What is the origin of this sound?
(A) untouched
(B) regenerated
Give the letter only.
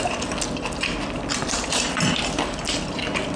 A